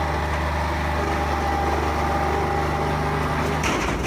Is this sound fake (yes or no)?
no